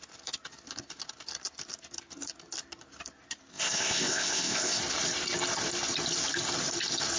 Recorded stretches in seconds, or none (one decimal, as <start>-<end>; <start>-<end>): 0.0-3.5; 4.8-7.2